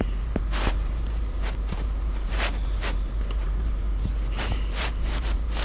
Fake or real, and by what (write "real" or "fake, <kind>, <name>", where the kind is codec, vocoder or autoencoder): fake, vocoder, BigVGAN v2